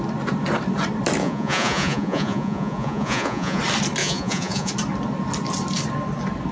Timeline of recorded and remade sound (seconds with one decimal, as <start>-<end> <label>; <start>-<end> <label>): 0.0-1.2 recorded; 1.2-3.6 remade; 3.6-4.0 recorded; 4.0-4.7 remade; 4.7-6.5 recorded